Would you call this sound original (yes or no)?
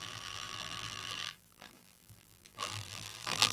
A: no